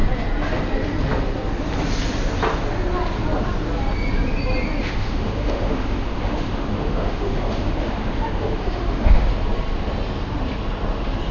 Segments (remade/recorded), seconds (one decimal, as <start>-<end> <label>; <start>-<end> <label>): 0.0-4.8 recorded; 4.8-9.3 remade; 9.3-11.3 recorded